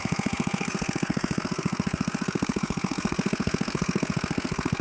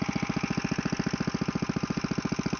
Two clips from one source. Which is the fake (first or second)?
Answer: first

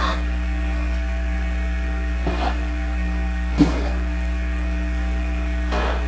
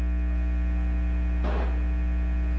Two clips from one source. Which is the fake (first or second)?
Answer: first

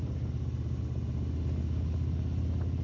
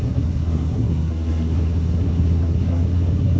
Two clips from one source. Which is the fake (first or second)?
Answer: second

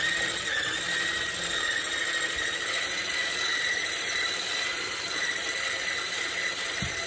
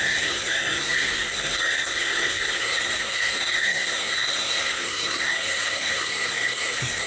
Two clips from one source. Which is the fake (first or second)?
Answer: second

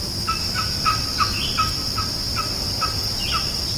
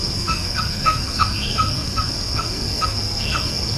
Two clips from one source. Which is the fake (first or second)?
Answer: second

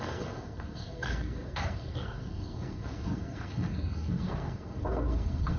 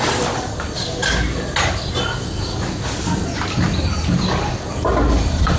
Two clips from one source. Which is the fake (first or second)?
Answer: first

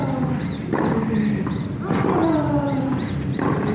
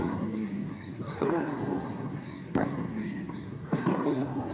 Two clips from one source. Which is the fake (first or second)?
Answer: second